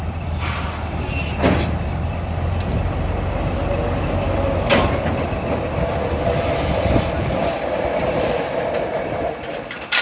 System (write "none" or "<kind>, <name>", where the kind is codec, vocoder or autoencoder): none